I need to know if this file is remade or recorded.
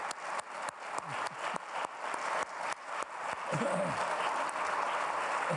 recorded